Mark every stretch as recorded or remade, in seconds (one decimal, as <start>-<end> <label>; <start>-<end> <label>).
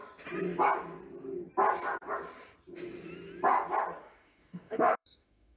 0.0-4.0 recorded; 4.0-5.6 remade